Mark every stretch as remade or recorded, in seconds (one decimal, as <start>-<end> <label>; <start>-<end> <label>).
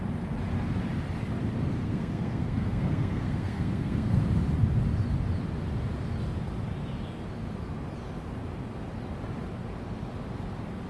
0.0-1.8 recorded; 1.8-4.2 remade; 4.2-10.9 recorded